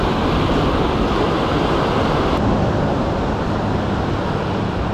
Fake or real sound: real